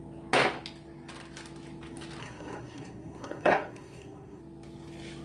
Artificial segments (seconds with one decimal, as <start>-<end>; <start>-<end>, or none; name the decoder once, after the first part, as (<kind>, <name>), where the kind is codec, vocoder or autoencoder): 2.2-4.4 (codec, SNAC)